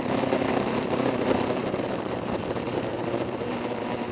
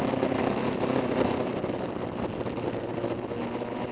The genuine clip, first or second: second